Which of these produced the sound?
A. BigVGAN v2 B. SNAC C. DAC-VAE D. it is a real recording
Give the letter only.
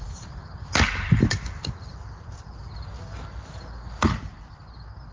D